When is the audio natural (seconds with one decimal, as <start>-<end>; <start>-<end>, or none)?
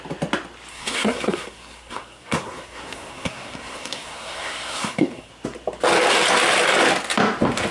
0.0-0.7; 5.3-7.7